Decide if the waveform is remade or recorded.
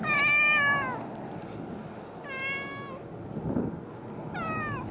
recorded